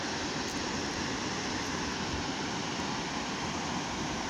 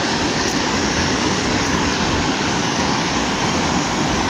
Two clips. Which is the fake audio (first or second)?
second